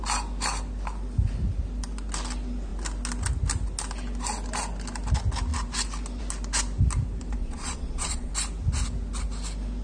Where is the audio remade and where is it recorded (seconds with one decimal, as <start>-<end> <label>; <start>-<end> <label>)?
0.0-7.4 recorded; 7.4-8.3 remade; 8.3-9.8 recorded